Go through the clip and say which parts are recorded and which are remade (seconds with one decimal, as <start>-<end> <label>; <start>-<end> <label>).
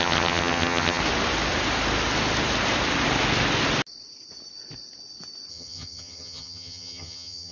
0.0-1.0 remade; 1.0-5.5 recorded; 5.5-7.5 remade